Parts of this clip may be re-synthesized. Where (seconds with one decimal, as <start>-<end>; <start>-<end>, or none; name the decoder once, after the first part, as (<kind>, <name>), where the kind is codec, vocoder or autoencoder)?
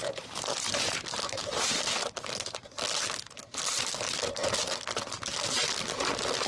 0.0-1.8 (vocoder, BigVGAN v2)